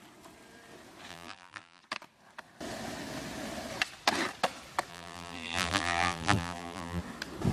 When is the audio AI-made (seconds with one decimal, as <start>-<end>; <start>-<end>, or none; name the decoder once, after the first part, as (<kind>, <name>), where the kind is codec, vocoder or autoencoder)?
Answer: 1.1-1.8 (vocoder, BigVGAN v2); 4.9-7.0